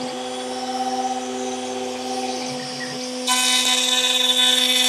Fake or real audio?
real